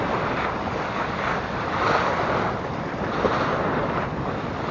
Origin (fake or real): real